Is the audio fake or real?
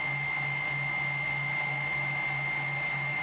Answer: real